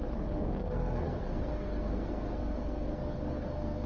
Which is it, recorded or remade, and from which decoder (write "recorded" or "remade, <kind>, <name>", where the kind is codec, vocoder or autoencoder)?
remade, codec, SNAC